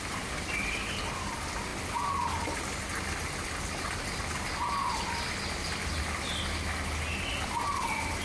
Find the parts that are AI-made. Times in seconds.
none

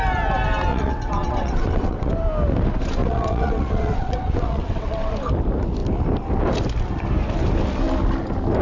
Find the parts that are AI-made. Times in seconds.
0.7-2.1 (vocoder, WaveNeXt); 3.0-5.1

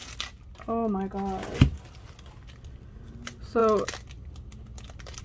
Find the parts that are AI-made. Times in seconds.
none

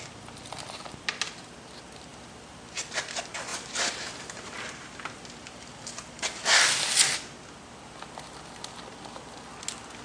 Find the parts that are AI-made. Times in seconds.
none

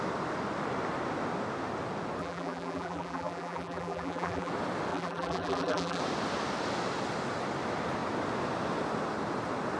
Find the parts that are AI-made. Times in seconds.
2.2-4.5 (vocoder, BigVGAN v2); 4.9-6.0

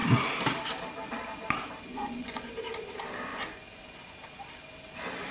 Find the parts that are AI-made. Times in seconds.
1.9-2.5 (vocoder, Vocos); 3.3-3.8

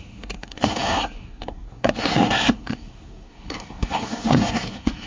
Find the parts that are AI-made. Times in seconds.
0.0-5.1 (codec, SNAC)